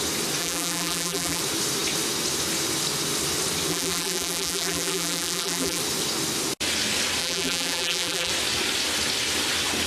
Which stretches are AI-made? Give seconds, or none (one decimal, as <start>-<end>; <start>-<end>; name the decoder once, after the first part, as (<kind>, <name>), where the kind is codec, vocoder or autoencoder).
0.4-1.4 (vocoder, BigVGAN v2); 3.7-5.8; 7.2-8.3